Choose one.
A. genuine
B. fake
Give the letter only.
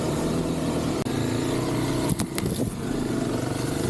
A